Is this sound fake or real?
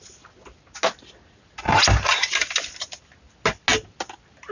real